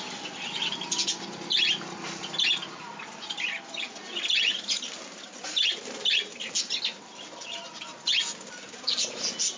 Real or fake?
real